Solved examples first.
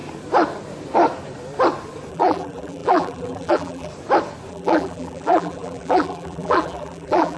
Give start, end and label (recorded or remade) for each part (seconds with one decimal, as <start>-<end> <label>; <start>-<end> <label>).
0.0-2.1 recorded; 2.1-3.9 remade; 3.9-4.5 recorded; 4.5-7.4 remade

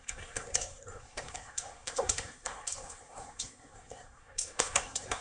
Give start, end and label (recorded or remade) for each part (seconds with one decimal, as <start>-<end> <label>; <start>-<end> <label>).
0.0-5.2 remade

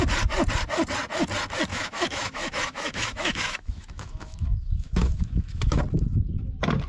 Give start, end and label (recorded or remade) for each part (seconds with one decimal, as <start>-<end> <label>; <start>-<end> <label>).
0.0-1.7 recorded; 1.7-5.8 remade; 5.8-6.9 recorded

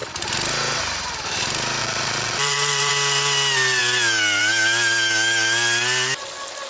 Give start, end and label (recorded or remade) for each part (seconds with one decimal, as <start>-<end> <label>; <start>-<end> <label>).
0.0-1.8 recorded; 1.8-2.9 remade; 2.9-6.7 recorded